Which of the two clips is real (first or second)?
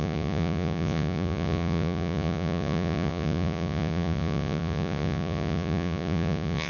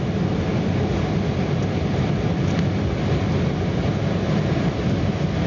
second